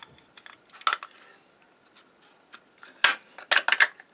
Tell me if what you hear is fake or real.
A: real